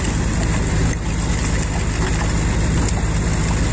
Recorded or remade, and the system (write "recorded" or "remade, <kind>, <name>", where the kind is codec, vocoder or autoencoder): recorded